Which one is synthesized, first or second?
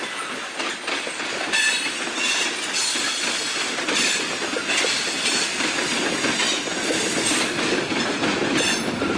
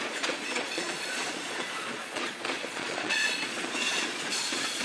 second